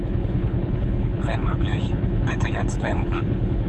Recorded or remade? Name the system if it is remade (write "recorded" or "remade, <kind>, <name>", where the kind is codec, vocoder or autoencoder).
remade, codec, HILCodec